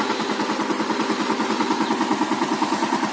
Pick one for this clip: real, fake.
real